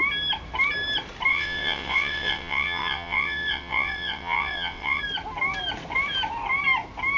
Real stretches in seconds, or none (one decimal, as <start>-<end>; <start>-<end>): 0.0-1.3; 5.0-7.2